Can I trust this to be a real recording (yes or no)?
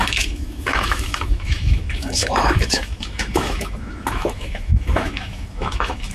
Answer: no